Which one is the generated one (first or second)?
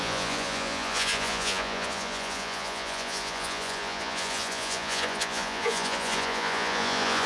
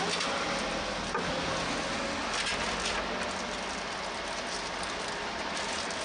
first